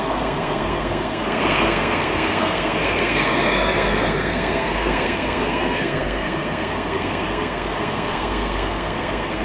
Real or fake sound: fake